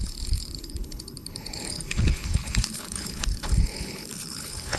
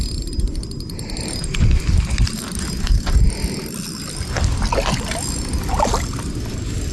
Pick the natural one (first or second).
second